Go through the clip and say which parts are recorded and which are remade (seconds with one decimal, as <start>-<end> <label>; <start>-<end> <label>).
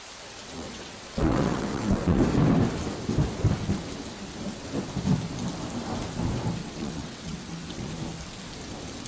0.0-0.4 recorded; 0.4-2.2 remade; 2.2-6.6 recorded; 6.6-7.9 remade; 7.9-9.1 recorded